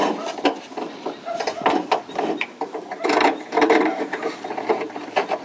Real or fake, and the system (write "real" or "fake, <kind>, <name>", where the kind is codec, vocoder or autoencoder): fake, vocoder, BigVGAN v2